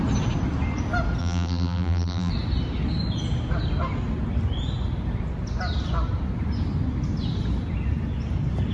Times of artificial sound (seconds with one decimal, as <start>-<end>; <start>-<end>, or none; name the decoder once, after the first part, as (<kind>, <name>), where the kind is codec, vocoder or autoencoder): 1.2-2.3 (vocoder, BigVGAN v2)